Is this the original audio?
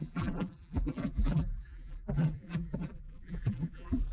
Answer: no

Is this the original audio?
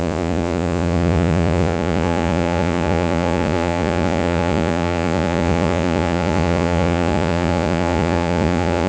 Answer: no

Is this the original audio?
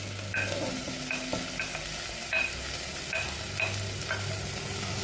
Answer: yes